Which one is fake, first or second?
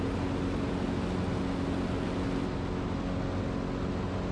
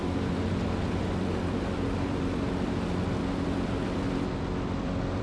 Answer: second